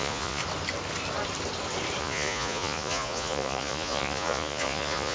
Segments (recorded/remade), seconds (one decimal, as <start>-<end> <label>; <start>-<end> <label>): 0.0-0.4 remade; 0.4-2.0 recorded; 2.0-5.1 remade